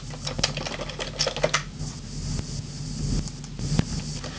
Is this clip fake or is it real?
real